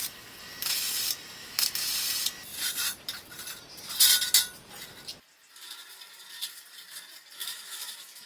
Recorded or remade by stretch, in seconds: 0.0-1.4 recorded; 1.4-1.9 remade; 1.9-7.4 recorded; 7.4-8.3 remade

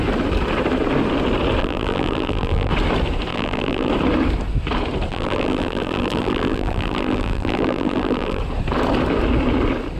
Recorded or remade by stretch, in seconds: 0.0-1.6 recorded; 1.6-2.7 remade; 2.7-3.3 recorded; 3.3-3.9 remade; 3.9-5.1 recorded; 5.1-8.4 remade; 8.4-10.0 recorded

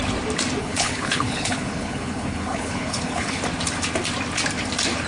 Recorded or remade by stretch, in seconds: 0.0-0.6 recorded; 0.6-3.4 remade; 3.4-5.1 recorded

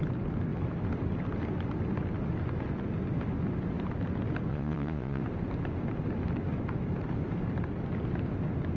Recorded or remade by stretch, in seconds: 0.0-4.5 recorded; 4.5-5.2 remade; 5.2-8.8 recorded

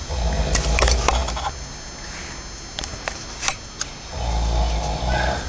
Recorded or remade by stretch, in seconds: 0.0-5.5 recorded

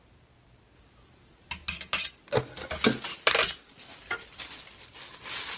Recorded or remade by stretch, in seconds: 0.0-5.6 recorded